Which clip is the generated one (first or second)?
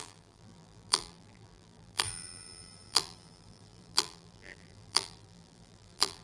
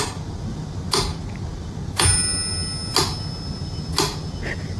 first